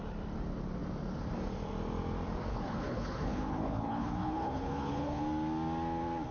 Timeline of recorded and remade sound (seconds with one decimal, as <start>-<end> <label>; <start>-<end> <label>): 0.0-2.5 recorded; 2.5-5.2 remade; 5.2-6.3 recorded